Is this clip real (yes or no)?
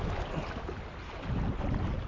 yes